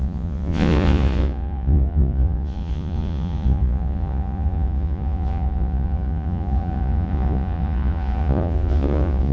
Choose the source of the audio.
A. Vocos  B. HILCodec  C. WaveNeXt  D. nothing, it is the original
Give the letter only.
A